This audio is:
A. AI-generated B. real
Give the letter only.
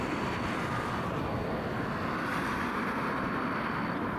B